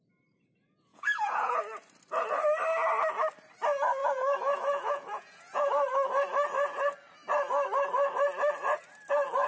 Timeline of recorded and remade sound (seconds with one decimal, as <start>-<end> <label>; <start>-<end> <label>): 0.0-0.9 recorded; 0.9-1.6 remade; 1.6-4.0 recorded; 4.0-5.7 remade; 5.7-9.5 recorded